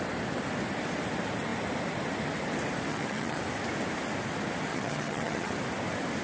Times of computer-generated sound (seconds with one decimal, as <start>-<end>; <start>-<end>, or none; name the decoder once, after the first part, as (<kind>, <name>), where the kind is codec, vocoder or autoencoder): 2.9-3.4 (vocoder, HiFi-GAN); 4.7-5.5